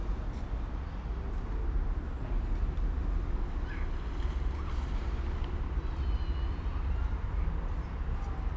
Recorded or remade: recorded